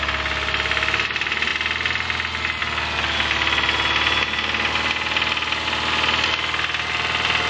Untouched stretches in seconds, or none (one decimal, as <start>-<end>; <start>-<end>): 0.0-7.5